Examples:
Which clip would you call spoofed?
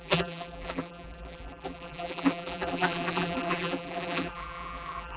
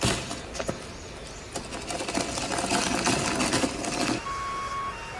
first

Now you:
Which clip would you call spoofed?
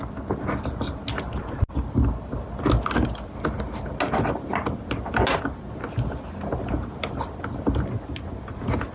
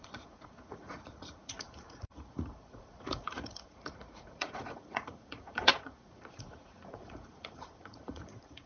second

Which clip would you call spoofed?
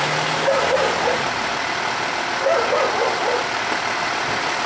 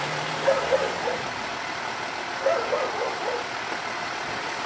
second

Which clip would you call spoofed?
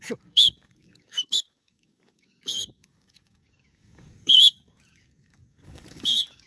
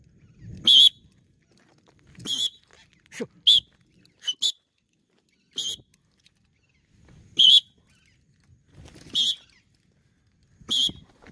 first